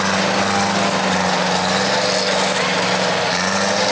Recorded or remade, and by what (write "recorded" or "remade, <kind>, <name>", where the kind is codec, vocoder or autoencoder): recorded